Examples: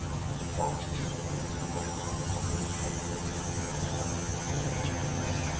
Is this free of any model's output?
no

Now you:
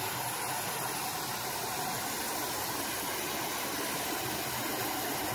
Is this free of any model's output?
yes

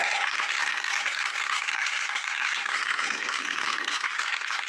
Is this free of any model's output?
no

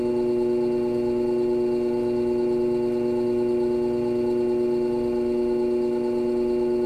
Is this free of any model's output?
yes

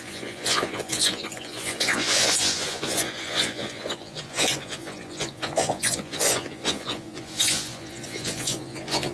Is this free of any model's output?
no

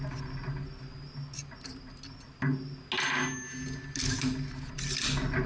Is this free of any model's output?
yes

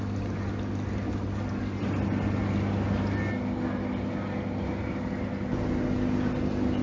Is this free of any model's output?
yes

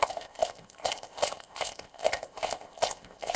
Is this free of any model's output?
no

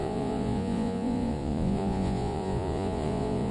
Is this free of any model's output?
no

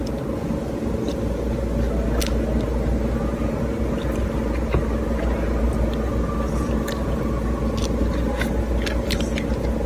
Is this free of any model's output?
yes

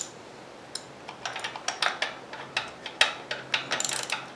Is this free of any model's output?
yes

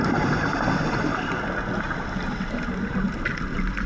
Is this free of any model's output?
yes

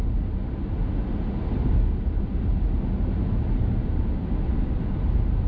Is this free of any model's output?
yes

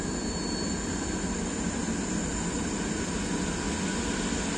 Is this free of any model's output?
yes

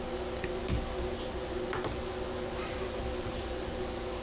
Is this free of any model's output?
yes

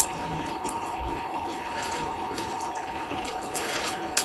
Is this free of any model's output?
no